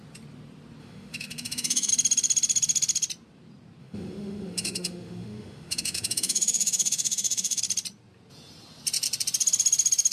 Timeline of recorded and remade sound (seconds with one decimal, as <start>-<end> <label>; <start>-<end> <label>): 0.0-0.8 recorded; 0.8-1.9 remade; 1.9-3.8 recorded; 3.8-7.6 remade; 7.6-10.1 recorded